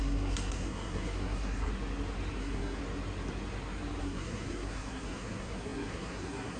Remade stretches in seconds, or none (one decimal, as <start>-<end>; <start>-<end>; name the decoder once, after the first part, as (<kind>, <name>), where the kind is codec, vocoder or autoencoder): 0.0-1.7 (codec, SNAC); 2.4-2.8; 4.0-6.6

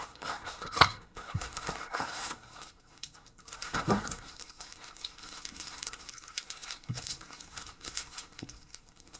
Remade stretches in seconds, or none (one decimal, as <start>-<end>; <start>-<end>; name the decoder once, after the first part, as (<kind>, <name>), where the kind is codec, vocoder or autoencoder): 0.0-9.2 (codec, SNAC)

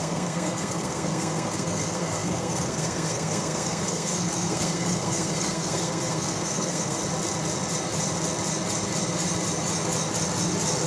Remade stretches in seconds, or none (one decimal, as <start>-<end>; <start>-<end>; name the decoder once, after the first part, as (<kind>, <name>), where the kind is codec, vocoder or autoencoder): 0.0-7.0 (codec, SNAC)

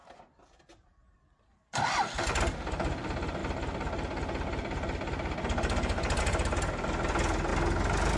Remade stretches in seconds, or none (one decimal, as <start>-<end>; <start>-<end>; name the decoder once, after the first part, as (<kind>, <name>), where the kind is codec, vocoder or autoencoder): none

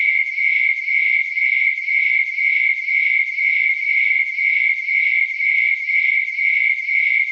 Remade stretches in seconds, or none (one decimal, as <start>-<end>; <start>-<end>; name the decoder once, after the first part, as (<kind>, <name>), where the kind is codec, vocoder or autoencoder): none

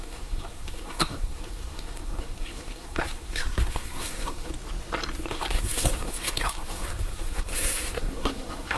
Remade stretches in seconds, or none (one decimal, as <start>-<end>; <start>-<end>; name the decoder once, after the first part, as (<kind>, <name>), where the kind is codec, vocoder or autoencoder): 0.0-4.5 (codec, SNAC); 5.3-8.8

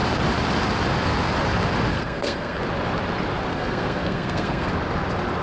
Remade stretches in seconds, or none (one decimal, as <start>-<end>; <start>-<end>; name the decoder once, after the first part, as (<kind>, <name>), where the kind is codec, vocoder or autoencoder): 1.9-2.6 (codec, SNAC); 3.5-4.7